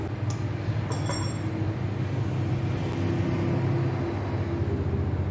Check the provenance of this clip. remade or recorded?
recorded